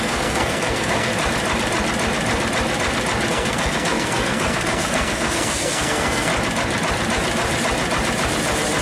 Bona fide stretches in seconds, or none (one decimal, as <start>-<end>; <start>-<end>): 1.1-3.3; 6.3-8.8